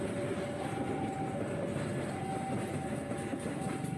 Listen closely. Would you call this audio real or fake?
real